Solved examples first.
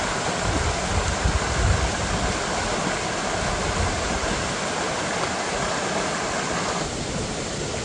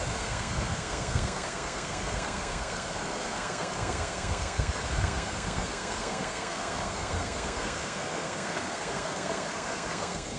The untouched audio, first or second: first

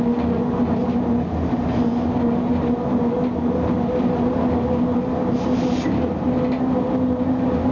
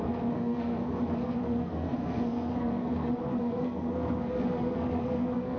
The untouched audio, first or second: first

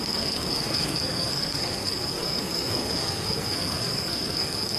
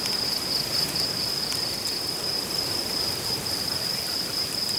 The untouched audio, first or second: second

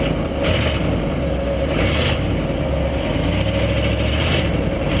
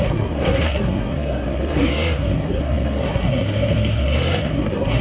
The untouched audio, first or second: first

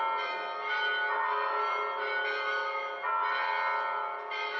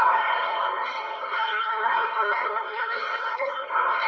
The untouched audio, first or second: first